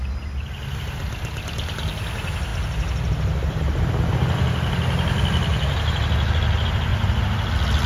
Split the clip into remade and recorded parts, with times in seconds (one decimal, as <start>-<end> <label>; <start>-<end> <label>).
0.0-5.5 recorded; 5.5-6.0 remade; 6.0-7.9 recorded